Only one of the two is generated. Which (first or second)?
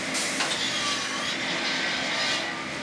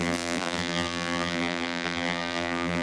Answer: second